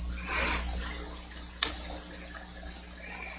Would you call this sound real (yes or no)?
yes